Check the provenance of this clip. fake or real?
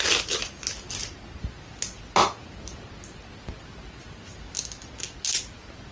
real